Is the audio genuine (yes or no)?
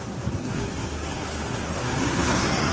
no